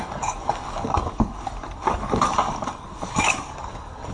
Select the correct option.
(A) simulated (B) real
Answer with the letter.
A